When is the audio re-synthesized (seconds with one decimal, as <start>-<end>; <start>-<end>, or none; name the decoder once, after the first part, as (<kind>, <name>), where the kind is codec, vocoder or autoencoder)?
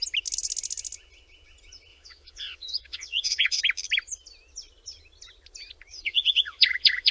1.9-3.6 (vocoder, Vocos); 5.9-7.1